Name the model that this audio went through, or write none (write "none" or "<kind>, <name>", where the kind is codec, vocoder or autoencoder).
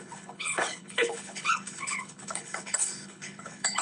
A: codec, HILCodec